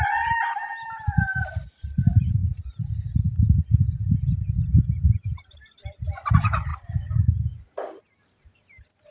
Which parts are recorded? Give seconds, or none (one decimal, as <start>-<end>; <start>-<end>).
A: 2.4-6.3; 6.7-8.0